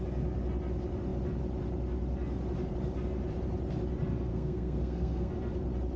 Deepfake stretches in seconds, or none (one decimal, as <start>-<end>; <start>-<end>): 4.3-5.3